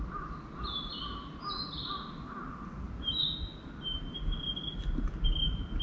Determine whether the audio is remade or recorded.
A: recorded